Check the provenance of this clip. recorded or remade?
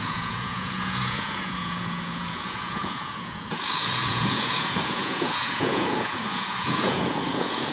remade